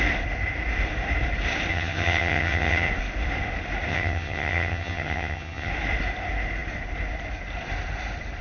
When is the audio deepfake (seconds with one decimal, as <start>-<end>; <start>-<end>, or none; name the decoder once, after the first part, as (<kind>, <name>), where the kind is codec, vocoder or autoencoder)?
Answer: 1.7-2.9 (vocoder, HiFi-GAN); 3.9-5.7